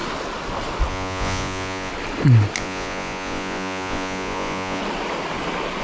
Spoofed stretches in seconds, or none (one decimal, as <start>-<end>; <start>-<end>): 0.9-1.9; 2.6-4.8